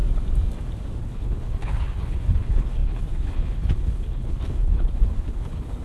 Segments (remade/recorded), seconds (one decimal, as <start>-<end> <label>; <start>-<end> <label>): 0.0-1.0 recorded; 1.0-5.8 remade